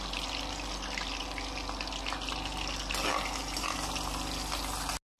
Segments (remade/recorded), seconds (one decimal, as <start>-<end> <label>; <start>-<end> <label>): 0.0-5.2 recorded